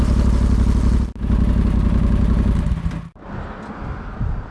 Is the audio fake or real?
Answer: real